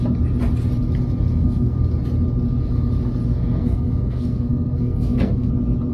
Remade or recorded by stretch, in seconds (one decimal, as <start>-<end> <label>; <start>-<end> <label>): 0.0-1.3 recorded; 1.3-1.8 remade; 1.8-3.3 recorded; 3.3-5.5 remade; 5.5-5.9 recorded